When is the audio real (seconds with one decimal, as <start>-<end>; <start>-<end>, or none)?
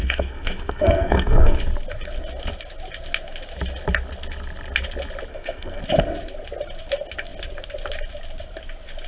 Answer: 1.6-5.3; 5.8-9.1